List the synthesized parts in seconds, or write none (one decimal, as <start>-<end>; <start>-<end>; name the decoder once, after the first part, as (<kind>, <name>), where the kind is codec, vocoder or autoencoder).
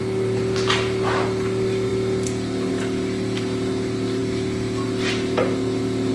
none